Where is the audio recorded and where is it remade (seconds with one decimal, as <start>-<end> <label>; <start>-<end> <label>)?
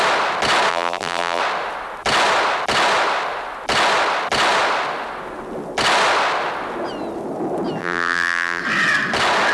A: 0.0-0.7 recorded; 0.7-1.4 remade; 1.4-7.8 recorded; 7.8-8.6 remade; 8.6-9.5 recorded